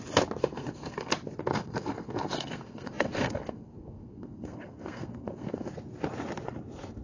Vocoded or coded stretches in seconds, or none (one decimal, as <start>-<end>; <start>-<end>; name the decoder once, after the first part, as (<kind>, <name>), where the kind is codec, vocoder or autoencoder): 0.4-1.1 (codec, SNAC); 1.5-5.7